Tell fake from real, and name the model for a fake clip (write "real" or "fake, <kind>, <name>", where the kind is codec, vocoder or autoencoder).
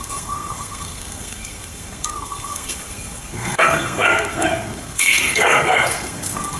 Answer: fake, codec, SNAC